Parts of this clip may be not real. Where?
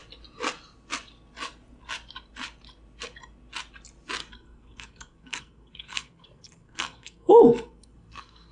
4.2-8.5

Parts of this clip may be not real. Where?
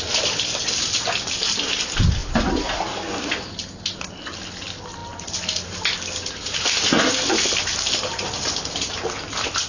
none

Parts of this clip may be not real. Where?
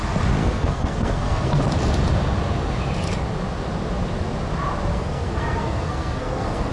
0.4-1.6; 4.9-6.7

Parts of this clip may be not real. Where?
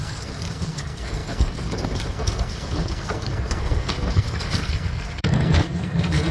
0.0-6.3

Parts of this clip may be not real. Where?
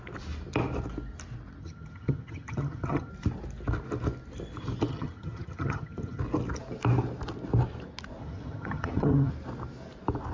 1.6-3.1; 4.9-6.2; 8.2-9.3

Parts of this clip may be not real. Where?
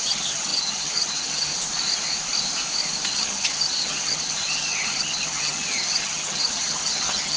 0.0-1.5; 3.1-7.4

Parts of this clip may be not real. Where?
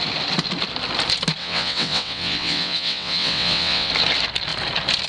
1.4-3.9